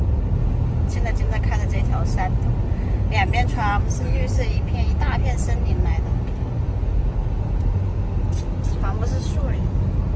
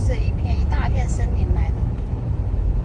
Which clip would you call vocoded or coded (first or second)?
second